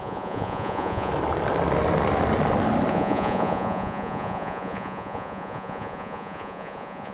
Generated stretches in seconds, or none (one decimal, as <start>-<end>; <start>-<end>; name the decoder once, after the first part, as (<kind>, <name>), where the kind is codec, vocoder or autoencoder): 0.0-1.1 (vocoder, Vocos); 2.9-7.1